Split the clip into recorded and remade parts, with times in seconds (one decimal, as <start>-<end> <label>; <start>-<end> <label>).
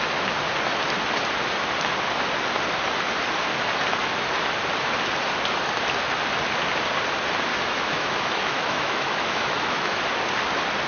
0.0-7.5 recorded; 7.5-10.0 remade; 10.0-10.9 recorded